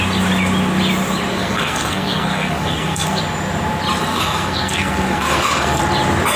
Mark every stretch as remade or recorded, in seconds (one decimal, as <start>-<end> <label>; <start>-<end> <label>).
0.0-1.3 recorded; 1.3-3.2 remade; 3.2-4.1 recorded; 4.1-5.8 remade; 5.8-6.4 recorded